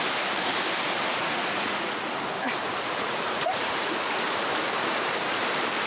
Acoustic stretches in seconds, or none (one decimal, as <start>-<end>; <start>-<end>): 0.0-1.1; 2.0-2.6; 4.1-5.9